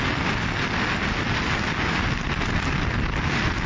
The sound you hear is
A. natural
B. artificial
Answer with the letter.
A